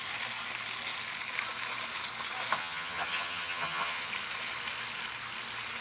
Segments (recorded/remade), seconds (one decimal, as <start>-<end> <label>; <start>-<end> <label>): 0.0-2.6 recorded; 2.6-4.1 remade; 4.1-5.8 recorded